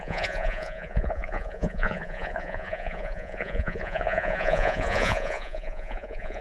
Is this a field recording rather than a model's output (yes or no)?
no